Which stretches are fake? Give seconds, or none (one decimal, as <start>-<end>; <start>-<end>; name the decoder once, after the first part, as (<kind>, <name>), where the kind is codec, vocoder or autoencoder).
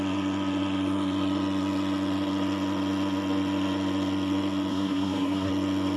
4.7-5.5 (codec, SNAC)